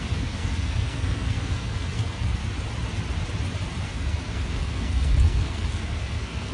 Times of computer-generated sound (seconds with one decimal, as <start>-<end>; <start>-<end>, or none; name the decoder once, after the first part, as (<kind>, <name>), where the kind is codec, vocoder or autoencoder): 0.0-2.4 (codec, SNAC); 3.8-6.5